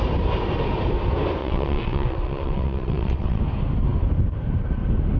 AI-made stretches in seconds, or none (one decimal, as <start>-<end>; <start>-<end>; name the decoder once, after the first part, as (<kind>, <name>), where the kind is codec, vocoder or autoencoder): 1.4-3.4 (vocoder, WaveNeXt)